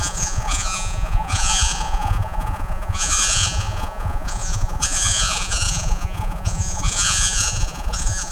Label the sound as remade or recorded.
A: remade